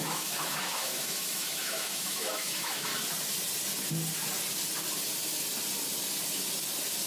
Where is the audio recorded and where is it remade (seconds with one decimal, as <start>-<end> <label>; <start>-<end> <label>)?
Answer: 0.0-2.9 remade; 2.9-7.1 recorded